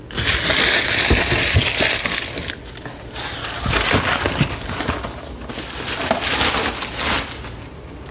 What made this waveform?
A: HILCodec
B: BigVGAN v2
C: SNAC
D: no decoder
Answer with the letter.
D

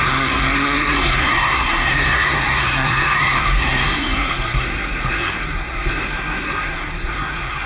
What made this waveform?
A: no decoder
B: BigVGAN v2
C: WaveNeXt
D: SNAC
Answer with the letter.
D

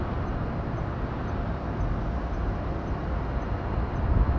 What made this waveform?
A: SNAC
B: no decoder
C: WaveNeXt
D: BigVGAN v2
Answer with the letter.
B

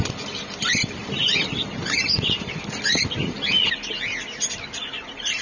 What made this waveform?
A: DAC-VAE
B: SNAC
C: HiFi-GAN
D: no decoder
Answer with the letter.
D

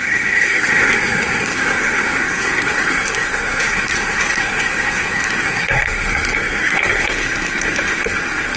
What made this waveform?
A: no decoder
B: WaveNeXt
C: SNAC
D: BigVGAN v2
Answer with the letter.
C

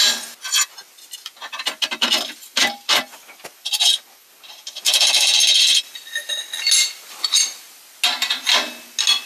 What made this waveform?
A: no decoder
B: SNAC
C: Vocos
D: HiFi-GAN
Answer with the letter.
A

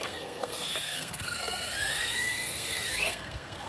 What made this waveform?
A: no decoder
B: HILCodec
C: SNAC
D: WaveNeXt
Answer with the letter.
C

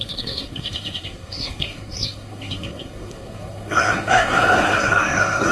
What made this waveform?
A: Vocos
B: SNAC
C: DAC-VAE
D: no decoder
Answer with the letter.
B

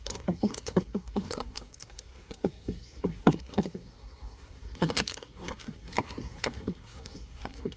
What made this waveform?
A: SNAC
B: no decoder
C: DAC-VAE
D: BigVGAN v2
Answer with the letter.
A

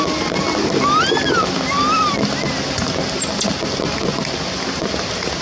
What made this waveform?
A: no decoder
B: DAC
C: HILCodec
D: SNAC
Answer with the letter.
A